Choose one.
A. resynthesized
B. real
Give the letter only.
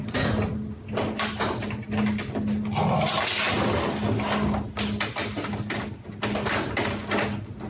B